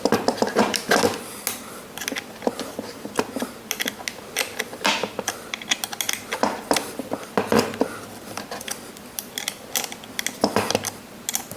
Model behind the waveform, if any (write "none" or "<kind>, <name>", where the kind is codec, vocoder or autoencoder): none